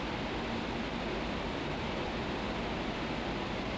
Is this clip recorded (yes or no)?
no